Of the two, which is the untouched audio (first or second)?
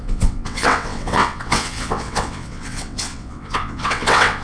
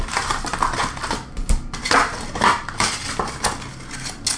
second